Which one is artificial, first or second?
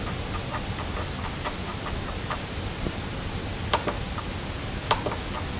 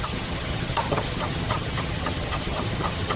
second